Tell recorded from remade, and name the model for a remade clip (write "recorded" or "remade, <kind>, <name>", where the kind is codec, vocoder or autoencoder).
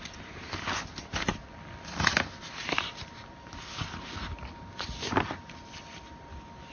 recorded